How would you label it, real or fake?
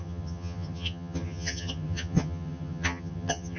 fake